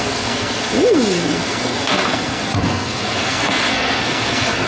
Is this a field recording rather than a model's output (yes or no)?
no